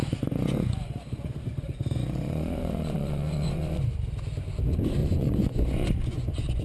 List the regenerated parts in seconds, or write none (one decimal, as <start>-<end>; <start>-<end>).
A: 0.0-3.8; 5.0-6.6